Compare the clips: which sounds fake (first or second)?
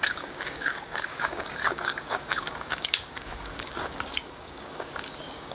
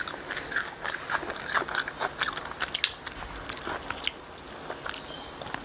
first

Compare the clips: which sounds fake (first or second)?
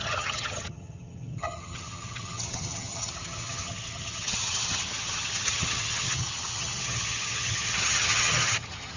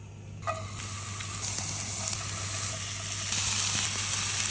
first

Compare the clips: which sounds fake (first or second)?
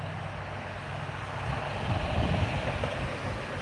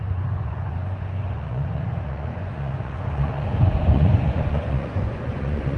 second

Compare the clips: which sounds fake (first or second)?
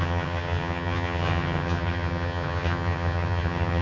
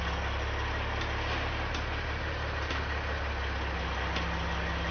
first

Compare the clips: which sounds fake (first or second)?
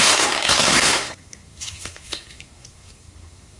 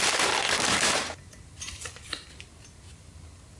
first